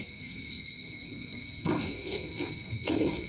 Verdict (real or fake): fake